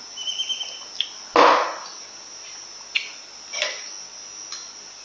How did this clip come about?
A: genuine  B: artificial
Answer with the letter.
A